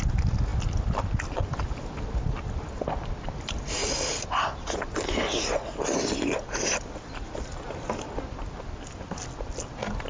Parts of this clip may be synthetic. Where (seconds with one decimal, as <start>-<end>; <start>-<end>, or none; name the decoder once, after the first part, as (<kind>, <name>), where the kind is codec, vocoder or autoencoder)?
none